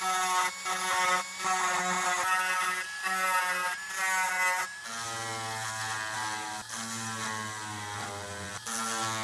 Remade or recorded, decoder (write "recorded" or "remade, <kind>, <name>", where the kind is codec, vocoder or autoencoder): recorded